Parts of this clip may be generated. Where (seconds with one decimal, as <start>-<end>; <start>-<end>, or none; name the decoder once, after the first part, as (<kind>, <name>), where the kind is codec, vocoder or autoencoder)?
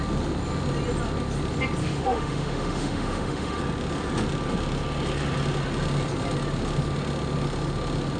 1.8-3.6 (autoencoder, DAC-VAE)